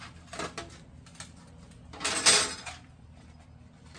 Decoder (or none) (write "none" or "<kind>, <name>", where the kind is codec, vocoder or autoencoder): none